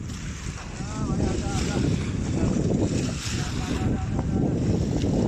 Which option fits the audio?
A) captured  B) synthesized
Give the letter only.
A